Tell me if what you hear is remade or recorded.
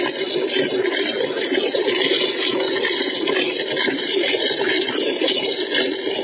recorded